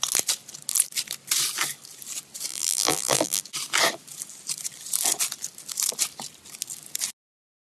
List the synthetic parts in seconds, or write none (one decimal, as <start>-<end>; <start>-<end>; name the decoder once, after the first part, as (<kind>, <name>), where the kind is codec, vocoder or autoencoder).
2.5-3.4 (vocoder, BigVGAN v2)